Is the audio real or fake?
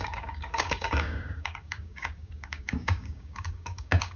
fake